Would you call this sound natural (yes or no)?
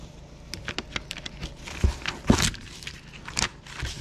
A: yes